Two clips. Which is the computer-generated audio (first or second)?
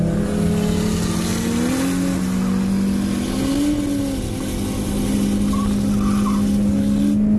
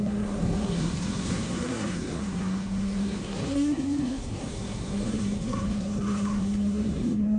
second